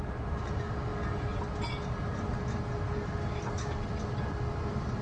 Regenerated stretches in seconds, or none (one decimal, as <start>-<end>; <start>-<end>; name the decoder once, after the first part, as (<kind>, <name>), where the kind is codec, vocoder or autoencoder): none